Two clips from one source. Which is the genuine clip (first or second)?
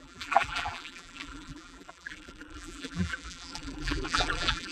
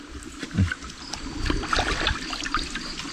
second